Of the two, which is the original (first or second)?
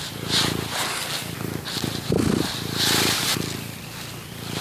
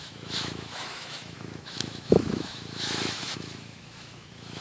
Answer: first